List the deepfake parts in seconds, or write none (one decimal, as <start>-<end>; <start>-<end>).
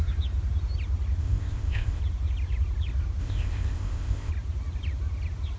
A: 1.2-2.0; 3.2-4.3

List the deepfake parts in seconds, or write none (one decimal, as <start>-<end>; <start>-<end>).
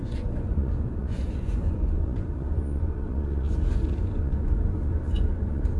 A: 0.0-5.8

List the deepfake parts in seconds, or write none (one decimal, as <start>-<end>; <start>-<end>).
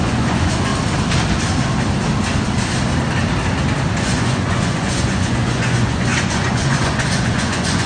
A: 0.0-0.7; 4.0-7.9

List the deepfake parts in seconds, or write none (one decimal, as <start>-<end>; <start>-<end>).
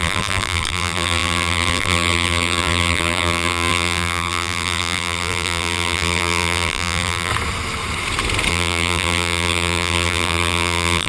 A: 0.0-7.3; 8.5-11.1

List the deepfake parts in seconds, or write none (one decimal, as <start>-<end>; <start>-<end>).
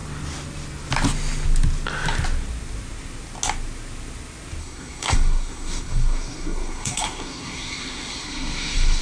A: 4.6-9.0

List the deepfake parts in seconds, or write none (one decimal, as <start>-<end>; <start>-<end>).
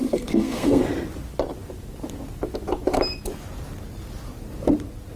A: 0.0-0.8